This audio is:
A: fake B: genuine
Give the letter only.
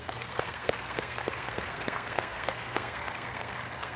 A